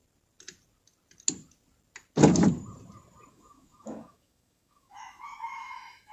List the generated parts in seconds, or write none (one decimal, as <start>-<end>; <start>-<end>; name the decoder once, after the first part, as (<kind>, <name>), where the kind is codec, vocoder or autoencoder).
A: 3.3-6.1 (autoencoder, DAC-VAE)